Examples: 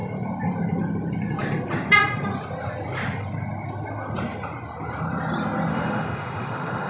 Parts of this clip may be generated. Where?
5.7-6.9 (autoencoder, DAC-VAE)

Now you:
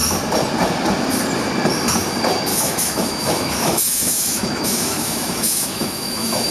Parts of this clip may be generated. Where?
2.5-6.5 (autoencoder, DAC-VAE)